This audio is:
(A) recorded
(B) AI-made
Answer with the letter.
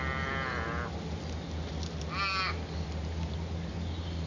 A